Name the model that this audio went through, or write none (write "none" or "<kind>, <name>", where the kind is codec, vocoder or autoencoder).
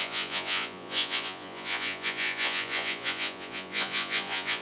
vocoder, Vocos